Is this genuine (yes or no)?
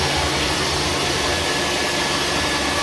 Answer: yes